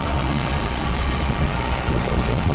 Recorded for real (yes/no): no